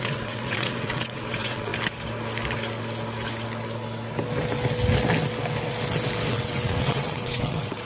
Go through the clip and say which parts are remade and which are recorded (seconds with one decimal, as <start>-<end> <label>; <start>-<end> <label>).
0.0-1.7 remade; 1.7-6.3 recorded; 6.3-7.9 remade